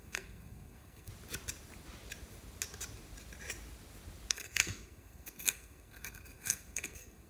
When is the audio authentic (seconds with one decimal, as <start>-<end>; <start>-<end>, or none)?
1.1-4.3